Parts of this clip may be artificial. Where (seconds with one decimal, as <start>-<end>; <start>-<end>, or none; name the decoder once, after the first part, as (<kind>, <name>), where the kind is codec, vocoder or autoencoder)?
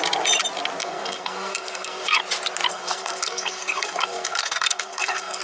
0.8-2.2 (codec, SNAC); 2.7-5.4